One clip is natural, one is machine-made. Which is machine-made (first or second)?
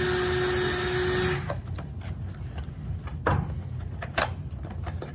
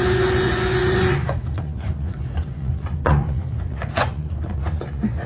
second